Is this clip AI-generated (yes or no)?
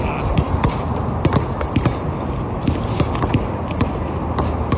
no